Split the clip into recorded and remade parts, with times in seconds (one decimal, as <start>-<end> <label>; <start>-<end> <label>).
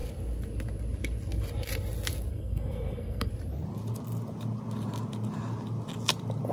0.0-2.3 recorded; 2.3-3.3 remade; 3.3-6.5 recorded